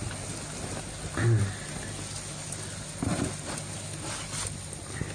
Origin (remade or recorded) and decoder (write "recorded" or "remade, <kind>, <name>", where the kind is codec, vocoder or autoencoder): recorded